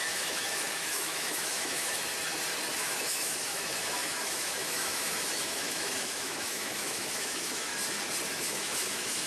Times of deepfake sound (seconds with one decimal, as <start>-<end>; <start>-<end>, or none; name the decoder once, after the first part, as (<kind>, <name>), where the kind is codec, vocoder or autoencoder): 0.0-2.1 (autoencoder, DAC-VAE); 2.8-7.7; 8.3-9.3